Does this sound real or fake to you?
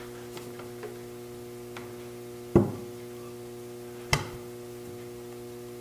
real